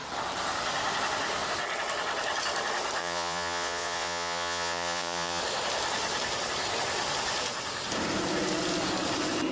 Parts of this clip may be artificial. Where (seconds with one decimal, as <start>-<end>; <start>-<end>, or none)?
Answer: 3.0-5.4